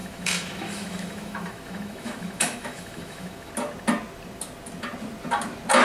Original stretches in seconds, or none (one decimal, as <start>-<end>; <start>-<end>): 3.5-5.8